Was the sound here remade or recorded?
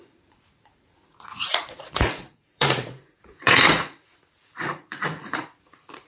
remade